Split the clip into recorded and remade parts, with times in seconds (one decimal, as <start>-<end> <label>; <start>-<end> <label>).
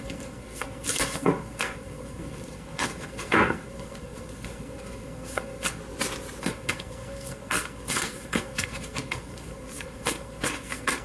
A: 0.0-5.8 remade; 5.8-6.4 recorded; 6.4-11.0 remade